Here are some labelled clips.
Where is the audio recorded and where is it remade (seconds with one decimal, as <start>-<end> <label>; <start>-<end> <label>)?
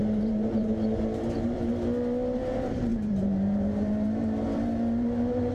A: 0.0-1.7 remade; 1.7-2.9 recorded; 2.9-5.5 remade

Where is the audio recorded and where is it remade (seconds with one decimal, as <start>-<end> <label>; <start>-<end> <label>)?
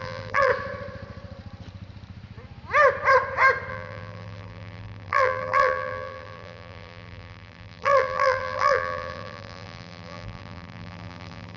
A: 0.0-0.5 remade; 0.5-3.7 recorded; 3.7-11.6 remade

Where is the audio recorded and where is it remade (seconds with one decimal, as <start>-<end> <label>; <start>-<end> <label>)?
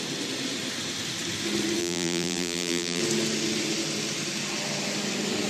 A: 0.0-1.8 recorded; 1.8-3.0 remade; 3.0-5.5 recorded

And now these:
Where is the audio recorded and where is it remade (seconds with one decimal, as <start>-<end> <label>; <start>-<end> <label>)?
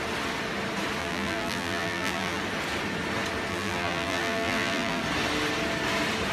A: 0.0-1.0 recorded; 1.0-2.4 remade; 2.4-3.5 recorded; 3.5-5.0 remade; 5.0-6.3 recorded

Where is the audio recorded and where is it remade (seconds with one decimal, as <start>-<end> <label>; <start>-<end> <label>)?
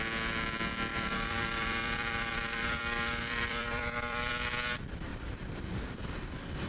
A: 0.0-0.9 recorded; 0.9-4.3 remade; 4.3-5.1 recorded; 5.1-6.7 remade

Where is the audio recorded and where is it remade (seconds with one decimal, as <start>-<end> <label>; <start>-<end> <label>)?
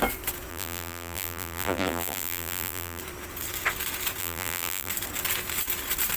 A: 0.0-0.5 recorded; 0.5-3.0 remade; 3.0-4.2 recorded; 4.2-4.9 remade; 4.9-6.2 recorded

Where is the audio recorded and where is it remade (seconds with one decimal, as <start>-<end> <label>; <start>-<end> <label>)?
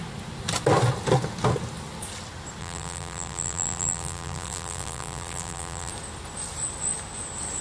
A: 0.0-2.6 recorded; 2.6-5.9 remade; 5.9-7.6 recorded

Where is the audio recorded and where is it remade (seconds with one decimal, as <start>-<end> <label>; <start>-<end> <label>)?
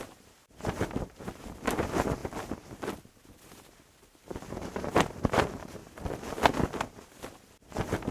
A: 0.0-2.2 remade; 2.2-4.0 recorded; 4.0-5.8 remade; 5.8-8.1 recorded